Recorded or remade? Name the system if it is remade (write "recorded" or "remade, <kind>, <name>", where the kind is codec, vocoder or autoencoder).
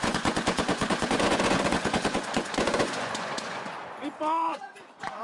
remade, vocoder, Vocos